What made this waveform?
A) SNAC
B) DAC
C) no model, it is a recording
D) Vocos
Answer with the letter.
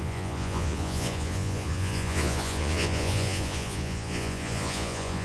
D